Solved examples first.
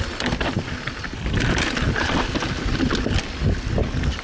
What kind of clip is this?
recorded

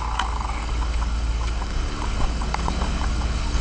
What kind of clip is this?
remade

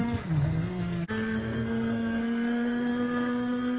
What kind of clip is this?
remade